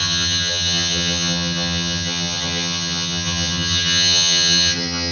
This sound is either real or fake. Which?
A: fake